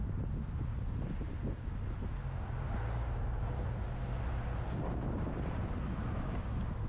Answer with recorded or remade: recorded